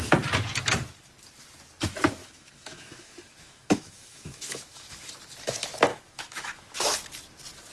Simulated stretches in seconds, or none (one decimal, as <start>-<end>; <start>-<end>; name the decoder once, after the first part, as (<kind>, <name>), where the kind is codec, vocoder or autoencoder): 2.2-5.1 (autoencoder, DAC-VAE); 5.9-6.8